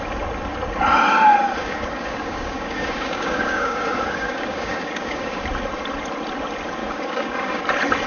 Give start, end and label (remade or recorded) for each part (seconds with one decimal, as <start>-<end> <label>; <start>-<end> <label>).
0.0-1.6 recorded; 1.6-5.4 remade; 5.4-6.8 recorded; 6.8-7.6 remade; 7.6-8.1 recorded